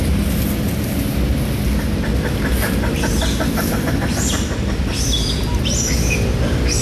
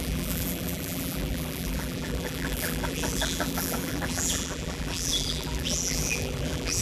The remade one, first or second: second